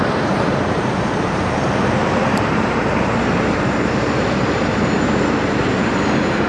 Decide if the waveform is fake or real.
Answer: fake